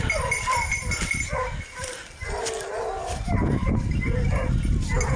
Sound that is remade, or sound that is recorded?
recorded